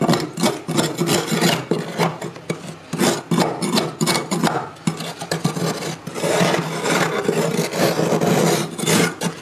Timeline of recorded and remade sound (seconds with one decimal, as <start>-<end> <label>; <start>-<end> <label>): 0.0-9.4 recorded